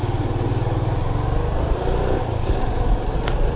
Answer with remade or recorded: recorded